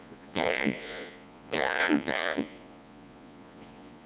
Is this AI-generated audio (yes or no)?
yes